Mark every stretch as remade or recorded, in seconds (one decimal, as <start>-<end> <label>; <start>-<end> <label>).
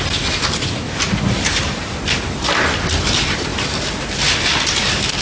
0.0-5.2 recorded